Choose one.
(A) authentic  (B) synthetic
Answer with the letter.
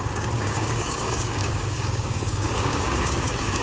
B